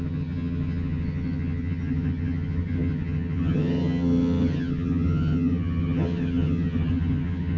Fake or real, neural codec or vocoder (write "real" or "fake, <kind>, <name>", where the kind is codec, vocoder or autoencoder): fake, vocoder, HiFi-GAN